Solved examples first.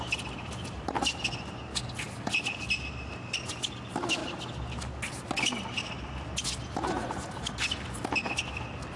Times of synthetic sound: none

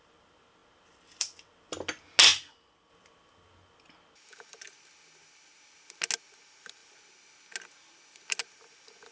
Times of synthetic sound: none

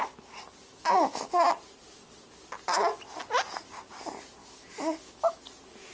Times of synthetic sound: 0.7-1.5 (autoencoder, DAC-VAE); 4.4-5.4